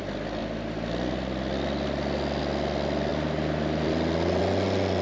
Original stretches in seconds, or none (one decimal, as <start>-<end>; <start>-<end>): 0.0-0.4; 2.4-3.1; 4.4-5.0